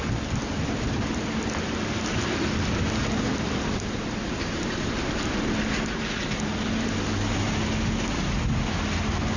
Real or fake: real